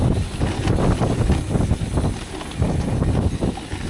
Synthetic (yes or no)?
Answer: no